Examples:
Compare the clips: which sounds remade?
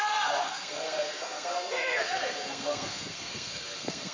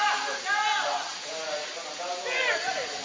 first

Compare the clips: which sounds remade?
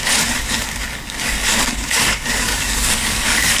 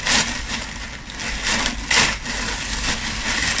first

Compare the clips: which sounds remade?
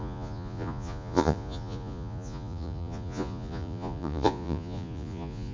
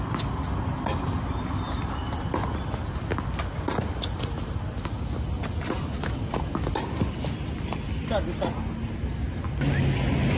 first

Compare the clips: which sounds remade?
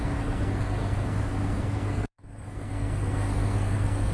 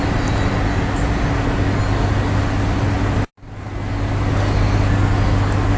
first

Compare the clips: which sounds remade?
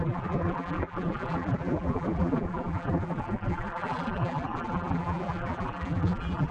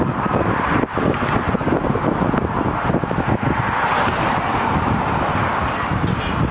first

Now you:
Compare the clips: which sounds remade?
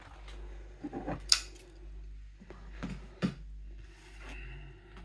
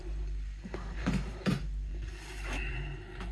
second